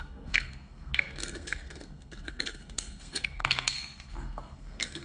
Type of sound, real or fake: fake